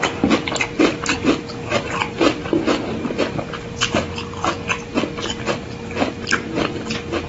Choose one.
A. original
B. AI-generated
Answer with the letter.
A